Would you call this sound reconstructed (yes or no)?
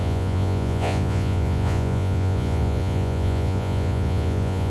yes